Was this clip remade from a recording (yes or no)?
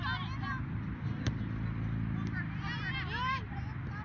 no